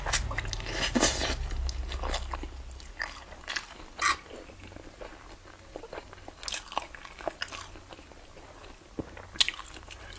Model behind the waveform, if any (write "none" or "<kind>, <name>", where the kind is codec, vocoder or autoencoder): none